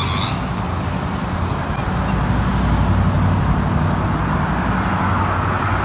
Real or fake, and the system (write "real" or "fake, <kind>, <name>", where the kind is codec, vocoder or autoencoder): real